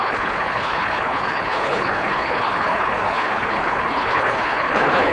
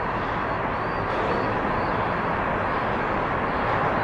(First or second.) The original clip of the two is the second